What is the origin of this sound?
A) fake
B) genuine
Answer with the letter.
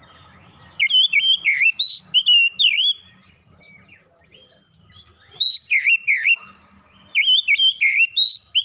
B